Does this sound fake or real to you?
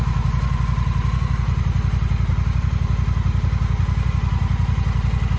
real